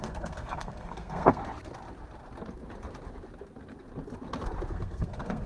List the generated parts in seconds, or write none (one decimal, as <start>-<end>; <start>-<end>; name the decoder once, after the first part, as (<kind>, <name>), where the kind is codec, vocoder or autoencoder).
0.0-1.4 (codec, SNAC); 4.7-5.5